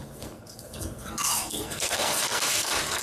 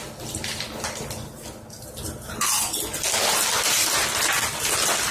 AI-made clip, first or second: first